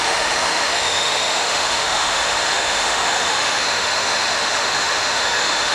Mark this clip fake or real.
fake